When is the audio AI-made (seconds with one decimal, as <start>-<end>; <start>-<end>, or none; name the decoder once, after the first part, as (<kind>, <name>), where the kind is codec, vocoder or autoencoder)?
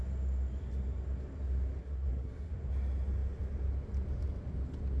1.8-2.5 (codec, SNAC)